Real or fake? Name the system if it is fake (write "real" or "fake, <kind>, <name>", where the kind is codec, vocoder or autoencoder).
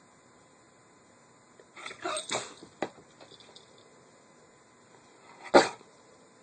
real